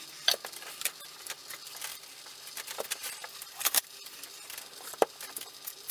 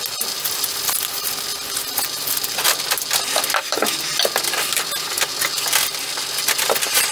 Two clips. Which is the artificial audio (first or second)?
first